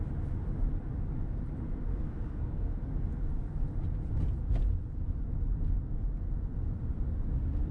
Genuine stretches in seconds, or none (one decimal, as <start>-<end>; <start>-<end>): 0.0-1.9; 2.7-7.7